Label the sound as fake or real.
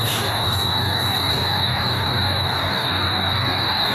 fake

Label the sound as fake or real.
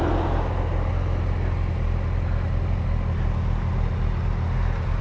real